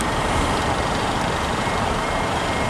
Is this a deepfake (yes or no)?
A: yes